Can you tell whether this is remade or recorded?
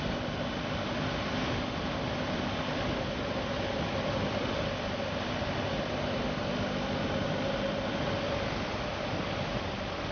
recorded